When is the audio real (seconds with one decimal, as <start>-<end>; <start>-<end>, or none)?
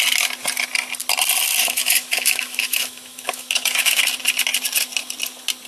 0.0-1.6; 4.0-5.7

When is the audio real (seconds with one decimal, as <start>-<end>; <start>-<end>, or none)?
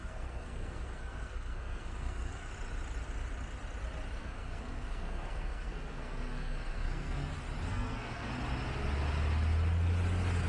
2.5-4.2; 7.3-7.7; 8.3-10.5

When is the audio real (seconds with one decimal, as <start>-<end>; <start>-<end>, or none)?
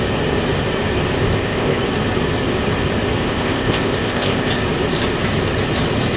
0.0-1.2; 1.8-3.2; 4.5-6.2